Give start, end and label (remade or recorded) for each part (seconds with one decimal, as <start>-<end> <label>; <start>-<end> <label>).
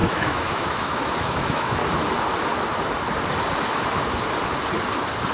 0.0-1.8 remade; 1.8-5.3 recorded